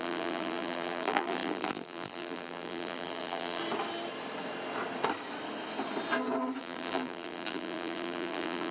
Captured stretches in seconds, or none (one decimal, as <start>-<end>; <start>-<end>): 3.6-6.6